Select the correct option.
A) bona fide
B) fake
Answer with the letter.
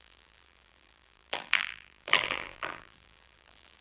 B